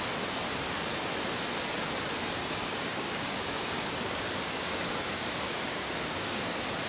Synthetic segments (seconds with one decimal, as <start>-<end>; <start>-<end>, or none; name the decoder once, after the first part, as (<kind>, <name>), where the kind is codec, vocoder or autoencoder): 2.4-6.5 (codec, DAC)